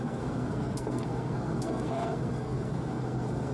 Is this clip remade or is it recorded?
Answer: remade